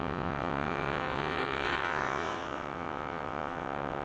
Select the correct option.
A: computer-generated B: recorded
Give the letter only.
A